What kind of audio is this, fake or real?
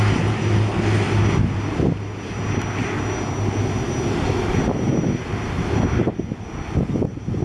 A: real